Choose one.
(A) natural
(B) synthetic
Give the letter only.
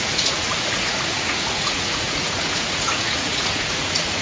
B